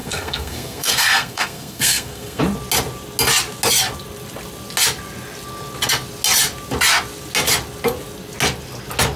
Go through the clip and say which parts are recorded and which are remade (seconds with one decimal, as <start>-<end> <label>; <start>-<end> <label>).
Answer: 0.0-2.4 remade; 2.4-9.2 recorded